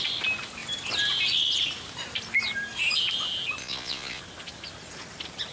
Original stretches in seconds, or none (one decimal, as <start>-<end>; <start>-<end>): 0.0-3.6; 4.2-5.5